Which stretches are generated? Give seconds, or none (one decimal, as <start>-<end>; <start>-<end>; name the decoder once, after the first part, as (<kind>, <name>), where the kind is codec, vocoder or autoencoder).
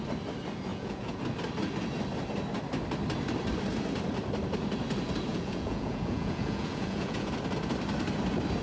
0.7-1.2 (vocoder, Vocos); 5.3-7.3